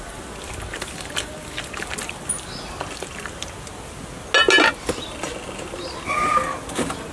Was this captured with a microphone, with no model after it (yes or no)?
yes